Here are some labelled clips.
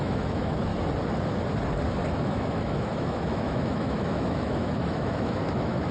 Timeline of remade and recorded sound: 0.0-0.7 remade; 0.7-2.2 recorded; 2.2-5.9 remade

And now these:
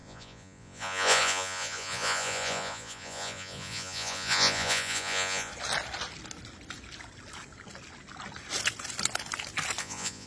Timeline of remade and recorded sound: 0.0-5.5 remade; 5.5-9.8 recorded; 9.8-10.3 remade

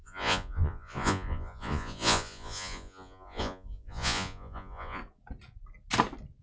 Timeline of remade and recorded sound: 0.0-5.0 remade; 5.0-6.4 recorded

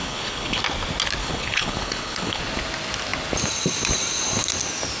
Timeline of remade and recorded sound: 0.0-0.6 remade; 0.6-1.2 recorded; 1.2-2.4 remade; 2.4-5.0 recorded

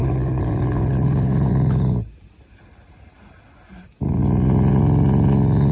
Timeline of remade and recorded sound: 0.0-1.5 remade; 1.5-5.7 recorded

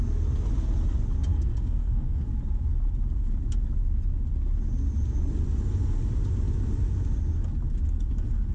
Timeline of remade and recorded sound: 0.0-1.3 recorded; 1.3-2.2 remade; 2.2-8.5 recorded

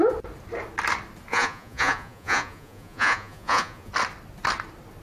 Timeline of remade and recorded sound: 0.0-1.3 recorded; 1.3-3.9 remade; 3.9-5.0 recorded

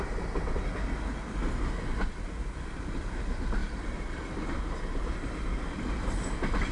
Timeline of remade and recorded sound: 0.0-6.7 recorded